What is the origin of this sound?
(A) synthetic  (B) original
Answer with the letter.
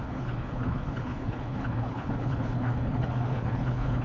A